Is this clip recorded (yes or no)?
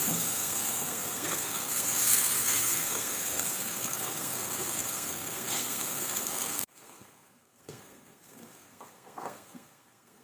no